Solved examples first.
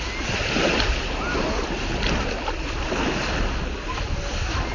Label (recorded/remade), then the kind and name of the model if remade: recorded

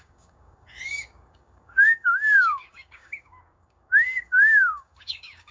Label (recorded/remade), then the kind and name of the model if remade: remade, codec, DAC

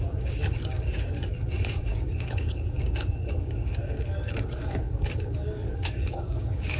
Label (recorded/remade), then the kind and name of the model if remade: remade, codec, DAC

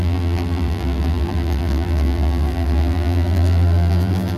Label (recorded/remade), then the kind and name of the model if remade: remade, vocoder, BigVGAN v2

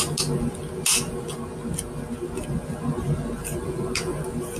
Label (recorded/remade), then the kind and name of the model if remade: recorded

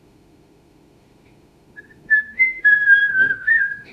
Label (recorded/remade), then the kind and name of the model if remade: remade, autoencoder, DAC-VAE